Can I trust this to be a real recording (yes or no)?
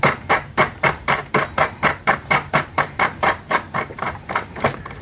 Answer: no